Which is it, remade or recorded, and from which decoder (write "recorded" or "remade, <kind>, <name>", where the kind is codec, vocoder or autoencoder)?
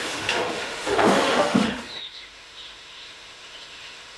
remade, autoencoder, DAC-VAE